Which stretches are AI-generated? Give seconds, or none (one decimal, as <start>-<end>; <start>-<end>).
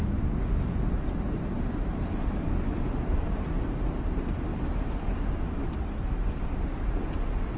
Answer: none